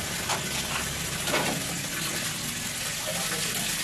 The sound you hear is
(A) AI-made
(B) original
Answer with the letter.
B